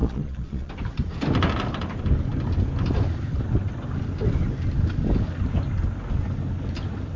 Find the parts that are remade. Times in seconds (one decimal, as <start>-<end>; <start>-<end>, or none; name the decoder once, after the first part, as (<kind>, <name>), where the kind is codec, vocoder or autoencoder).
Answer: 0.0-0.7 (vocoder, Vocos)